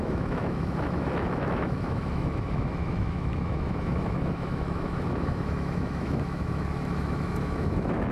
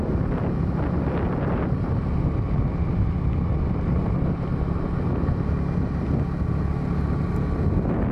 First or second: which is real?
second